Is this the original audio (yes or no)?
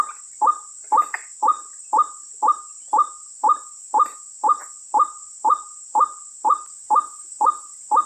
no